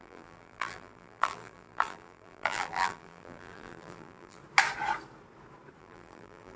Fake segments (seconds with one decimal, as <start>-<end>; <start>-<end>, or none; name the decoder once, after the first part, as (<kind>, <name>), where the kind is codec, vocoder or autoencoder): 0.0-4.4 (vocoder, BigVGAN v2); 5.8-6.6